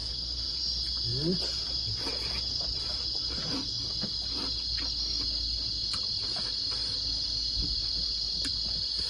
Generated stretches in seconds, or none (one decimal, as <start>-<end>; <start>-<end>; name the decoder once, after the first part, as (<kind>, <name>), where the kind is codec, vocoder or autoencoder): none